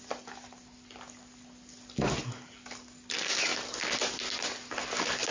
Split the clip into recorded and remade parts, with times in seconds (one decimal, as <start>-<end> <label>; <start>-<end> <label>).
0.0-5.3 recorded